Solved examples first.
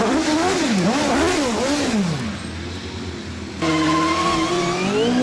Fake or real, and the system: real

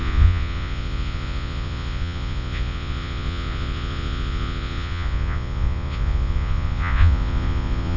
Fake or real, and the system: fake, vocoder, Vocos